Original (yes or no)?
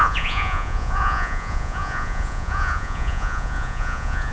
no